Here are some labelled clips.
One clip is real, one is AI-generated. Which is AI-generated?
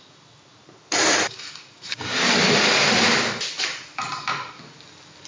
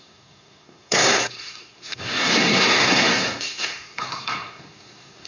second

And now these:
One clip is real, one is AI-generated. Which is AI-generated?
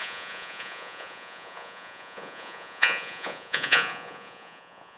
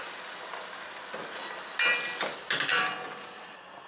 first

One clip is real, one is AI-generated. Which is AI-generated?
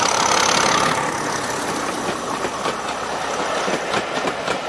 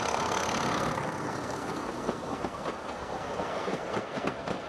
second